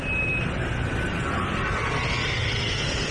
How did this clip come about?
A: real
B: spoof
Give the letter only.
A